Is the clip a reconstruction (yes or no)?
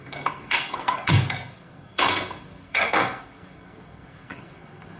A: yes